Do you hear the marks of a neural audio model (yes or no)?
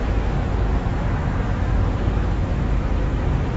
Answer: yes